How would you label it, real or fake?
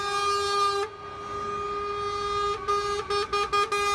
real